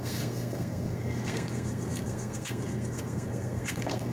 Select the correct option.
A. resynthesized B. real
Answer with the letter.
A